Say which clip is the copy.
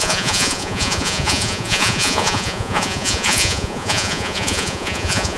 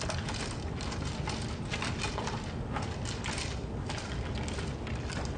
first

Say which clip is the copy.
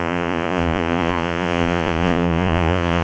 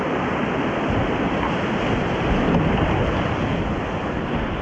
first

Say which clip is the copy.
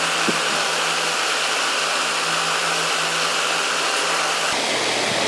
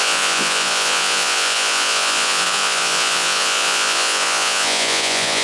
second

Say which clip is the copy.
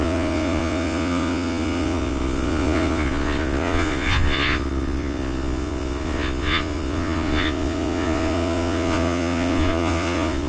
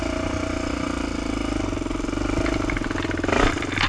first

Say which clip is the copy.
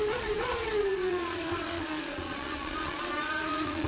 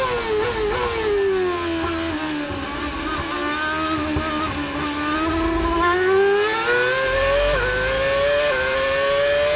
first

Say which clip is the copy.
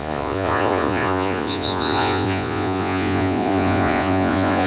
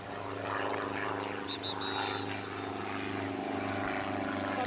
first